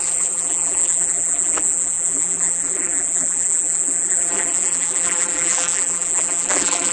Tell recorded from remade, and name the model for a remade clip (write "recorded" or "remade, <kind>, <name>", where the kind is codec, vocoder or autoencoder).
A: remade, vocoder, BigVGAN v2